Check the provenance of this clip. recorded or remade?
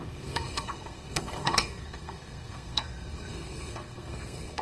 remade